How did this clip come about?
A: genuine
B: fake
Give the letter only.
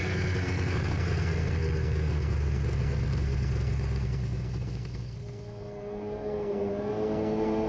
B